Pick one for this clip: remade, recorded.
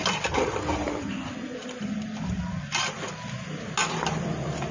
recorded